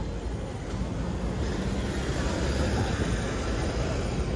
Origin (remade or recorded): recorded